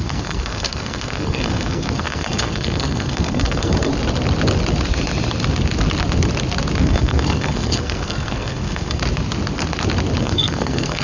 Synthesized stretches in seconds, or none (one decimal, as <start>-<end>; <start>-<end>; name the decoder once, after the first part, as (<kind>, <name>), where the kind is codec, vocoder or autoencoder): 0.0-3.9 (codec, SNAC); 6.8-9.0; 10.2-11.0